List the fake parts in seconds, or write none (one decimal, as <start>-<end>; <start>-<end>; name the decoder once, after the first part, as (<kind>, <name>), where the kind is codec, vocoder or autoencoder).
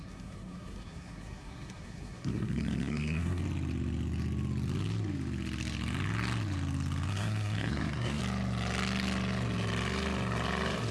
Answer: 0.0-3.4 (codec, SNAC); 7.1-8.2